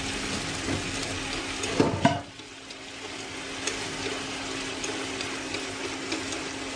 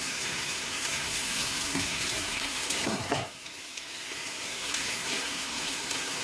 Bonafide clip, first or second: first